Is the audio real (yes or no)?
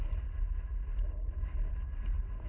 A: yes